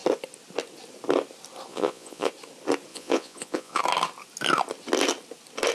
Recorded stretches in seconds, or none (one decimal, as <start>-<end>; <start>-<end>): 0.0-1.7; 2.3-2.9; 3.8-5.7